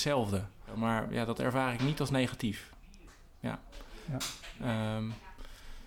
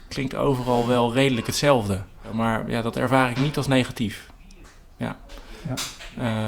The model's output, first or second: second